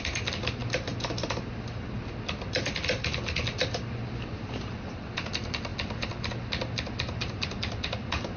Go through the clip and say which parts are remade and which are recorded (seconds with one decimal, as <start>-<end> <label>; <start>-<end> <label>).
0.0-8.4 recorded